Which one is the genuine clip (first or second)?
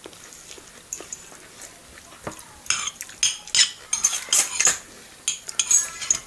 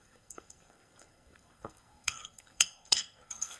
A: first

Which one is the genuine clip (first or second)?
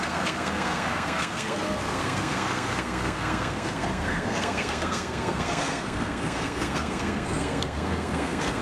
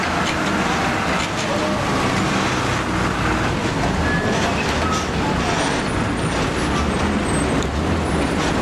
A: second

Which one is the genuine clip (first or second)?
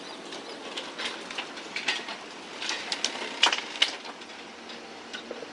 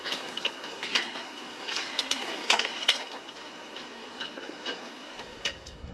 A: first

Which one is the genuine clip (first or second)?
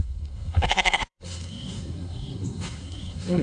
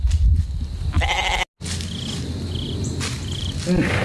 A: second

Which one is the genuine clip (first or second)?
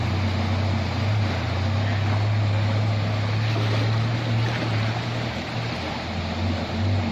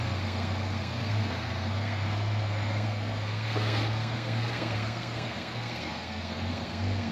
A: first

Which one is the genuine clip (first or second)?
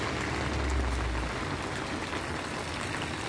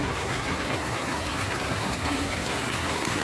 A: first